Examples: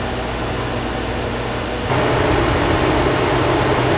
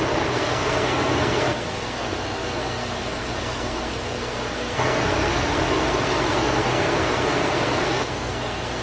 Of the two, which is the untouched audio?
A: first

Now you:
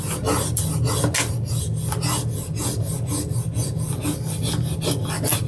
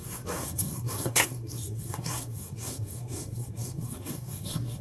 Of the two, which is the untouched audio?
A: first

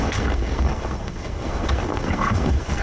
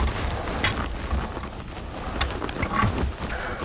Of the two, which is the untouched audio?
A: second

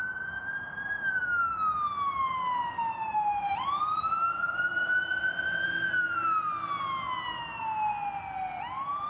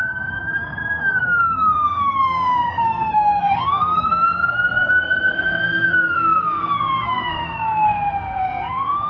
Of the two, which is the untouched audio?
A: first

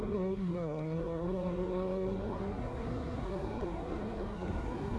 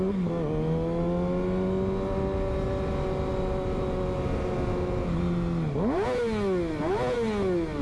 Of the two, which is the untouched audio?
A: second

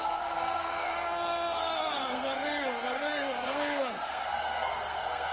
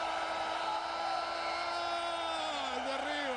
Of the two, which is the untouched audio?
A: second